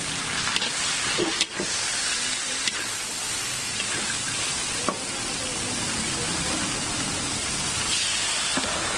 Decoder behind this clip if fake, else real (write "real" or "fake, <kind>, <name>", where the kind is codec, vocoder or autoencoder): real